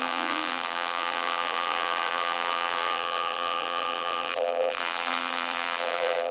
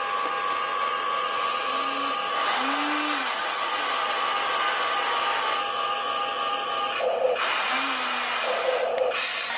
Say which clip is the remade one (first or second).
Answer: first